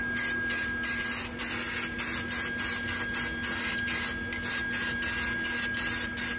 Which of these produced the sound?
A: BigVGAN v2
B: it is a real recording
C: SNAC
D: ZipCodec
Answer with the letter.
B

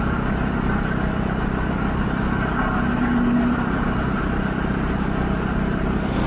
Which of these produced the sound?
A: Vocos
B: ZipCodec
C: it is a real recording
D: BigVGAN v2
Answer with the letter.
C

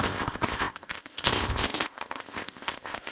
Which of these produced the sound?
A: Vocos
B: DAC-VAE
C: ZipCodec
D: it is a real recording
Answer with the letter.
C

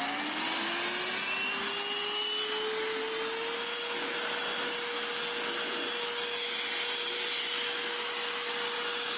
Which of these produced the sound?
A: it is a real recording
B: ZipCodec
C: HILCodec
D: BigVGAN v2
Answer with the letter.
A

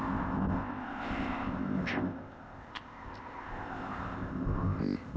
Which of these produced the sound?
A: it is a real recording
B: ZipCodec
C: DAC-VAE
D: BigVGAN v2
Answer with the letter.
B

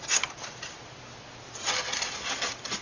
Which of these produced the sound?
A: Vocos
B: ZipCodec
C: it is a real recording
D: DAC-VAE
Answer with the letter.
C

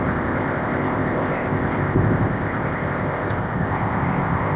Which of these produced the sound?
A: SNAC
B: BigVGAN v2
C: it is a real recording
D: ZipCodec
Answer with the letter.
D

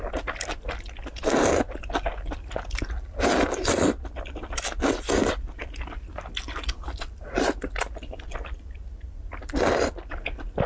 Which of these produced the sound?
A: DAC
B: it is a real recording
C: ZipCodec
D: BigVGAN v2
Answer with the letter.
B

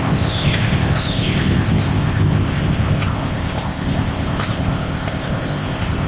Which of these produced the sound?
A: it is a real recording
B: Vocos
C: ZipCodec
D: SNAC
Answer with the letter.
C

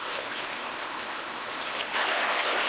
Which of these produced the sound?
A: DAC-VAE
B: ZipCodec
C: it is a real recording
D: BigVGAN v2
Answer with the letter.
B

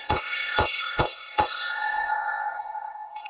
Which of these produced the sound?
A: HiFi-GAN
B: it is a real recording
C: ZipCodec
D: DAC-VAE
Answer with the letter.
C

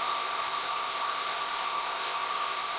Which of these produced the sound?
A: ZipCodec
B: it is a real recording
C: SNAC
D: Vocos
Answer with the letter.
A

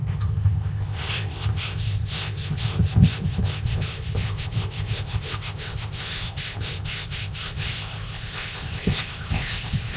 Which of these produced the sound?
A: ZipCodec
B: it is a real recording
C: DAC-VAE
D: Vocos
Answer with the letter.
A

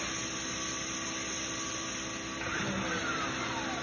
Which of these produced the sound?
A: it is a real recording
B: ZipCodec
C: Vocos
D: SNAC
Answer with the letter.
A